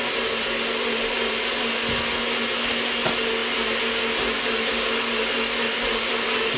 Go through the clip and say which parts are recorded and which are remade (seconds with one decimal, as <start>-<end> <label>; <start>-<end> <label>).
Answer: 0.0-6.6 recorded